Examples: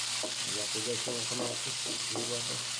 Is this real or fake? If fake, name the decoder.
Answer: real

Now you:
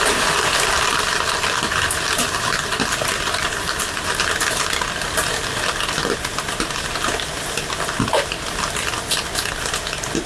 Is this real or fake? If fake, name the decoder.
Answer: real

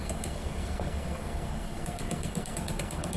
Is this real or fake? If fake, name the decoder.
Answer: fake, codec, SNAC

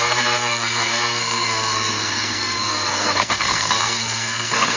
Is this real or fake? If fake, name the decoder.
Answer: fake, codec, SNAC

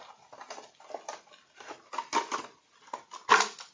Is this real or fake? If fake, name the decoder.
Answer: real